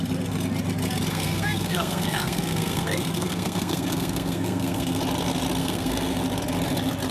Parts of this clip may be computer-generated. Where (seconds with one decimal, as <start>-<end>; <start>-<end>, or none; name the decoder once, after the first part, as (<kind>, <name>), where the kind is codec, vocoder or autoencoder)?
1.1-5.0 (codec, SNAC); 5.6-6.2